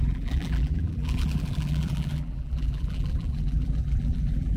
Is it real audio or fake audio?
fake